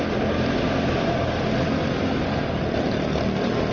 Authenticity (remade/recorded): recorded